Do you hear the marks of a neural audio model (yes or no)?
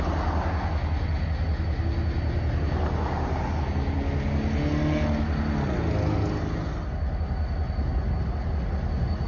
no